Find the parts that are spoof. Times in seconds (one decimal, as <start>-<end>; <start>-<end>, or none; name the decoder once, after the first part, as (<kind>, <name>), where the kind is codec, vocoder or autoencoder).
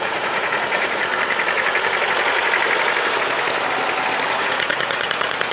0.0-1.1 (vocoder, Vocos); 4.4-5.5